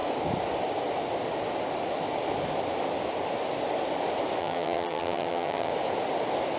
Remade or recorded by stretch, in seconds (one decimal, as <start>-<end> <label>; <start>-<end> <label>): 0.0-4.4 recorded; 4.4-5.7 remade; 5.7-6.6 recorded